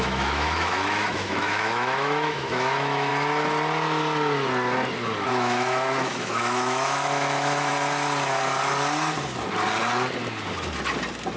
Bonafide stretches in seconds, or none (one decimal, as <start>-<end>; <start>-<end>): 3.1-5.3; 7.7-11.4